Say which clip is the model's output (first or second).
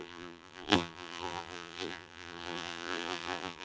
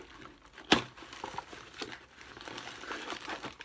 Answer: first